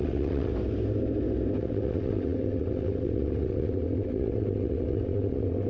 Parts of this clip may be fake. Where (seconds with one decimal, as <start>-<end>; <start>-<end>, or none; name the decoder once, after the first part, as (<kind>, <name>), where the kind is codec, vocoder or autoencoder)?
0.0-0.5 (vocoder, WaveNeXt); 1.6-5.7